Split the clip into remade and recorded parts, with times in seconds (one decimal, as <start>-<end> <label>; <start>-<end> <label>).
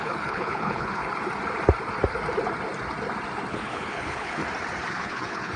0.0-1.0 remade; 1.0-3.5 recorded; 3.5-4.4 remade; 4.4-4.9 recorded; 4.9-5.6 remade